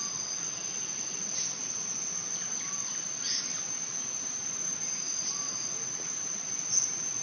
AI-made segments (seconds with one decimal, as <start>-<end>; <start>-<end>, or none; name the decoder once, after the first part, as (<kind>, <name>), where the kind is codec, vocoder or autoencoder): 3.4-7.2 (vocoder, BigVGAN v2)